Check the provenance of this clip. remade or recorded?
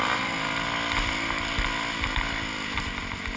recorded